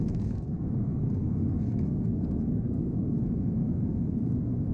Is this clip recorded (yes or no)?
no